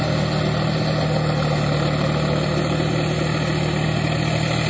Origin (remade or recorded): recorded